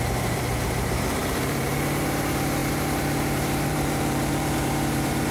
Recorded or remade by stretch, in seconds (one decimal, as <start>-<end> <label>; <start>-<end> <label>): 0.0-5.3 remade